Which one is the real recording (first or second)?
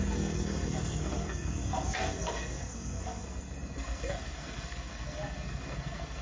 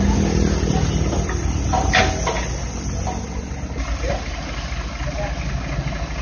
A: second